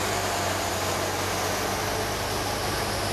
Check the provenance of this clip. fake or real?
real